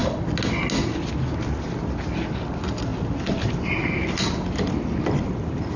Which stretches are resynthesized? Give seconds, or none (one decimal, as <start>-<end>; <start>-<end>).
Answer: none